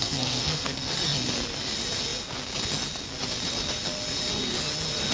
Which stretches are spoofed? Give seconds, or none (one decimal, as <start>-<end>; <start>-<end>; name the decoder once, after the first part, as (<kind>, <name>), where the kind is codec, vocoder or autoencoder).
0.0-0.9 (codec, SNAC)